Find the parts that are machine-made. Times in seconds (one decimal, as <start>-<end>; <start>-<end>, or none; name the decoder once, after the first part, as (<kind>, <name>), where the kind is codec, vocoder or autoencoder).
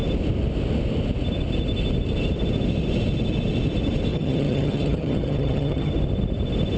4.1-5.9 (vocoder, HiFi-GAN)